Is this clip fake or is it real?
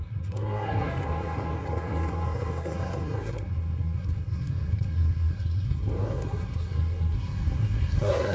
fake